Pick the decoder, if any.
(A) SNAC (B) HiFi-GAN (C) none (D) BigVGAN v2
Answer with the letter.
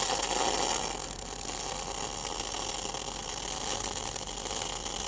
C